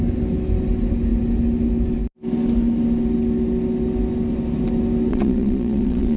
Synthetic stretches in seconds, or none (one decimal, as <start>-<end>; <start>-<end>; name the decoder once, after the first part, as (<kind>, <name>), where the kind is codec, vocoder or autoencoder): 5.1-6.2 (vocoder, Vocos)